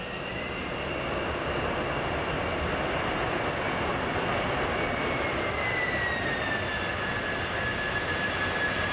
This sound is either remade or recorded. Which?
recorded